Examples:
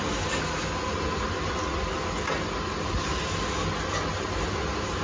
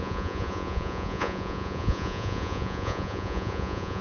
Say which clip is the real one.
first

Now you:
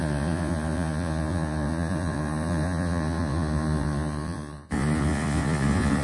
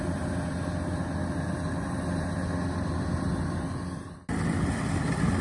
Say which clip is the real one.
second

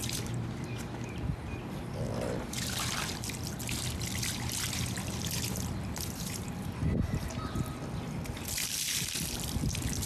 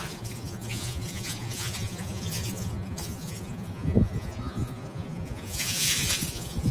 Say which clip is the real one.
first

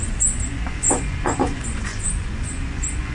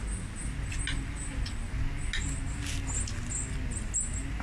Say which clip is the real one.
second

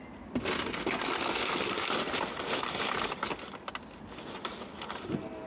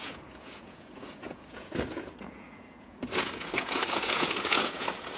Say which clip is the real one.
first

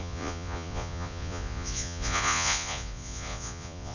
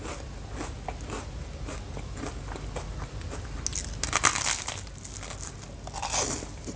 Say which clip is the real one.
second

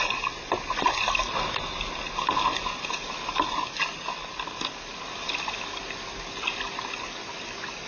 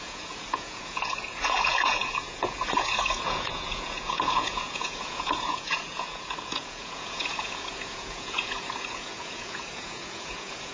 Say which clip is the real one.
first